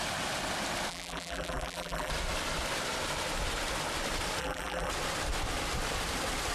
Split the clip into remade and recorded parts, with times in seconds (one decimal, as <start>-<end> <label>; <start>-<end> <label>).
0.0-0.9 recorded; 0.9-2.1 remade; 2.1-4.4 recorded; 4.4-4.9 remade; 4.9-6.5 recorded